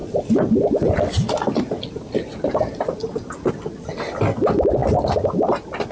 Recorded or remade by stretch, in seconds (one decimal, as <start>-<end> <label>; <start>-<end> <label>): 0.0-5.9 recorded